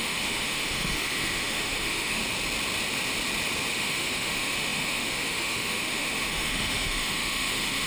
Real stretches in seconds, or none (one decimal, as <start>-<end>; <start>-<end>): 2.2-3.7